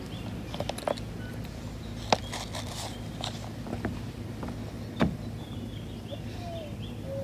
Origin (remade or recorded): recorded